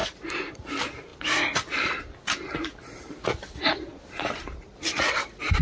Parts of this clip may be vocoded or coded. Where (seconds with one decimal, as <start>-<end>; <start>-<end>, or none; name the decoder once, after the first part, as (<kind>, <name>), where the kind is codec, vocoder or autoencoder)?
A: 0.0-0.5 (vocoder, BigVGAN v2); 3.9-4.8